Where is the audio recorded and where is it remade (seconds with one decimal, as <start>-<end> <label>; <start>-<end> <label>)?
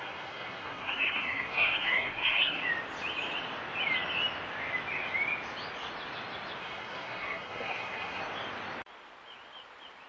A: 0.0-2.6 remade; 2.6-6.6 recorded; 6.6-8.2 remade; 8.2-10.1 recorded